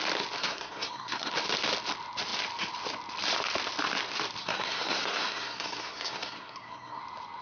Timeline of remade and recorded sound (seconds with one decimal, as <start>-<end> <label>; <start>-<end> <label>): 0.0-0.4 recorded; 0.4-1.3 remade; 1.3-4.4 recorded; 4.4-7.0 remade; 7.0-7.4 recorded